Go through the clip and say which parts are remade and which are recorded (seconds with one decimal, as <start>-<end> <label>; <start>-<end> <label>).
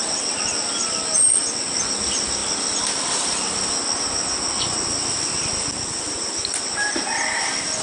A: 0.0-7.8 recorded